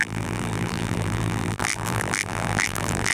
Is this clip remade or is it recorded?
remade